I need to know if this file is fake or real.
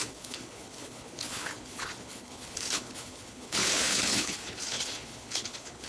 fake